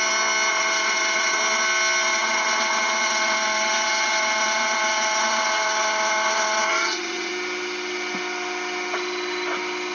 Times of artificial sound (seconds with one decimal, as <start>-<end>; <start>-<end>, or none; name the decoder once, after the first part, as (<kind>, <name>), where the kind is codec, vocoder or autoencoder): 0.5-1.4 (vocoder, WaveNeXt); 2.1-7.3